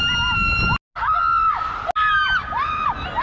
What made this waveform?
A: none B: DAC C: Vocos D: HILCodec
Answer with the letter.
A